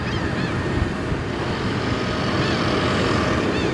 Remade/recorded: recorded